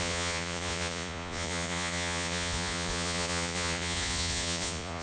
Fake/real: fake